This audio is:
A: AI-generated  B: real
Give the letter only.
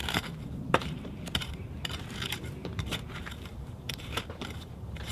A